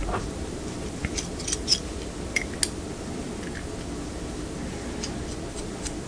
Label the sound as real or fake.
real